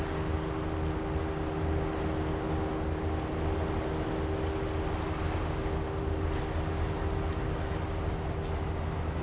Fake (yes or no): no